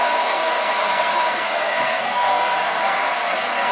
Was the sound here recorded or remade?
remade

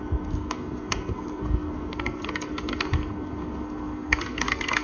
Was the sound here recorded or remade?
remade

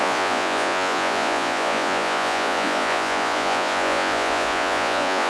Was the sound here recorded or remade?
remade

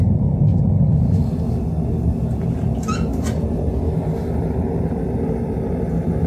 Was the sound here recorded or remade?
recorded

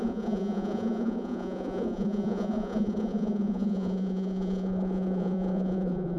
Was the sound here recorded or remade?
remade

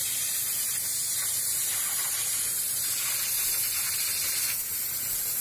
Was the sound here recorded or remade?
recorded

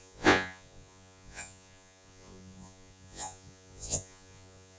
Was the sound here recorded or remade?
remade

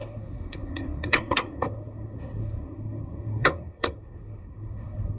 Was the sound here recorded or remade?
remade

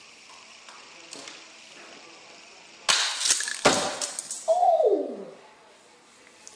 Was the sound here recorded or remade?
recorded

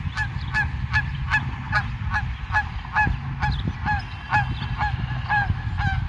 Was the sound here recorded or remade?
recorded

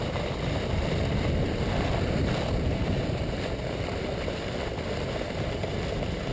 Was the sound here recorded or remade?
recorded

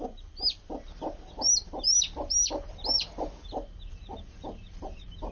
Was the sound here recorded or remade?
recorded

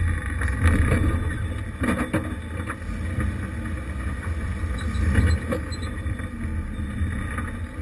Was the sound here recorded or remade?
recorded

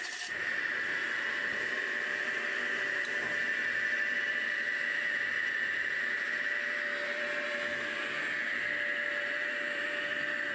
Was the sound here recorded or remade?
remade